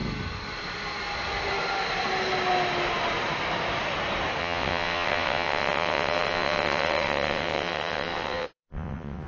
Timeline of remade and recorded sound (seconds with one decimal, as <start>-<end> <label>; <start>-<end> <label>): 0.0-4.4 recorded; 4.4-9.3 remade